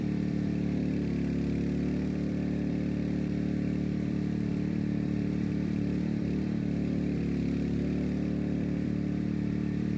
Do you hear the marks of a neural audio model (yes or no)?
yes